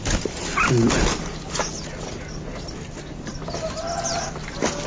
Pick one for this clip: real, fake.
real